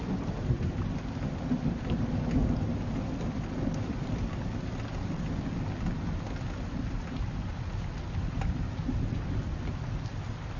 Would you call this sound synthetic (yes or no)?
no